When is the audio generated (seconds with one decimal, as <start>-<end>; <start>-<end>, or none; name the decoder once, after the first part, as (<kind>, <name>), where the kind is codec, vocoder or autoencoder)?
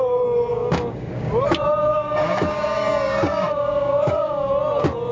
0.5-1.3 (codec, DAC); 1.9-4.5